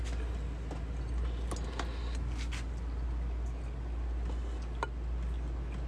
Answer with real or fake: real